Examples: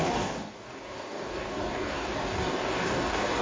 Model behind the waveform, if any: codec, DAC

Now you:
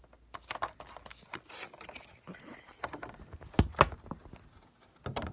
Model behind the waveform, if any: none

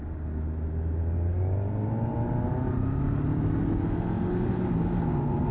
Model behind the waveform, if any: none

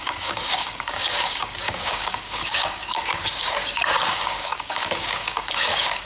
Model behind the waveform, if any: codec, DAC